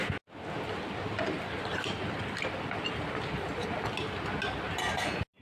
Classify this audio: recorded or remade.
recorded